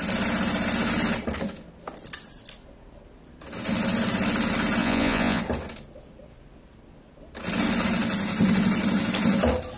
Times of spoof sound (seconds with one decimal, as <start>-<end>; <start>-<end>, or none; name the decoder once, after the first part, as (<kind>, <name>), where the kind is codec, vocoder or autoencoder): 4.8-5.4 (vocoder, Vocos)